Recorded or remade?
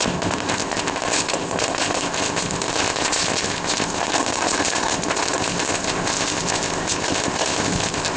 remade